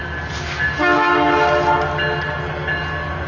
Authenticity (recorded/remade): recorded